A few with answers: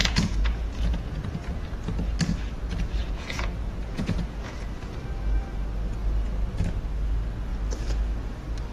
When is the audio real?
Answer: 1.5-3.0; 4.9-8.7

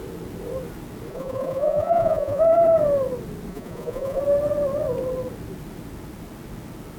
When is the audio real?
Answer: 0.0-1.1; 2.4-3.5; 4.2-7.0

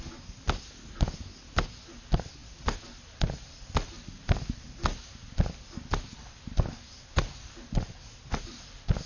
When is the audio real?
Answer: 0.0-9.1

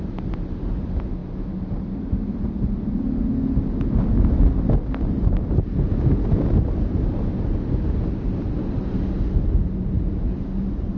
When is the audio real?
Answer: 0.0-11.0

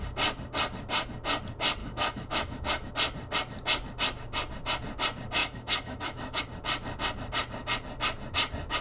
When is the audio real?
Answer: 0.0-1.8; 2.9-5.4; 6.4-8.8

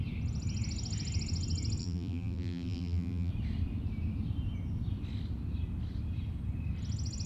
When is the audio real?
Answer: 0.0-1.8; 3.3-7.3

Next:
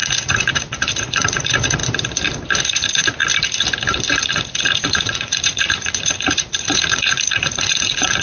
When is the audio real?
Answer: 1.8-2.5; 3.2-4.2

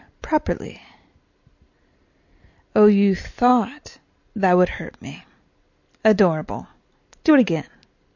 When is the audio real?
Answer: 0.0-8.2